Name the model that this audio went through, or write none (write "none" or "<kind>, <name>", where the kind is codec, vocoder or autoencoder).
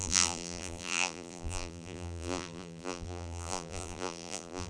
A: vocoder, BigVGAN v2